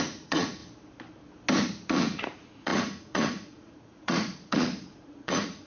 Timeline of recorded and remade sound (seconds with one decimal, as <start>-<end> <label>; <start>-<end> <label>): 0.0-0.6 remade; 0.6-1.9 recorded; 1.9-5.7 remade